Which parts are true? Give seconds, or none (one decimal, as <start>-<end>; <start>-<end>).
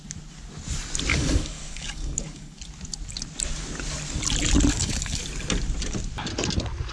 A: 0.0-1.1; 2.6-4.7; 5.2-6.9